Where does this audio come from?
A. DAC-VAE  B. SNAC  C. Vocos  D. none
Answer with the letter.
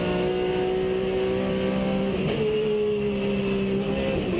D